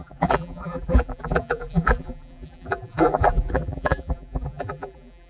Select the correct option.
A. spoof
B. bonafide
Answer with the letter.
A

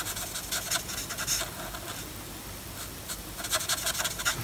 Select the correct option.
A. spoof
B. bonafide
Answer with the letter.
B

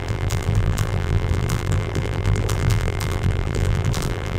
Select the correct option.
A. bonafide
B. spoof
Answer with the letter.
B